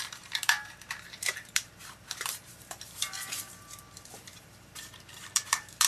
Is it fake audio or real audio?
fake